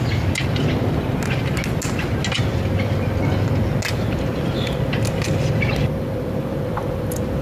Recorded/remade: recorded